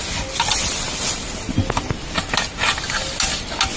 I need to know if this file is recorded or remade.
recorded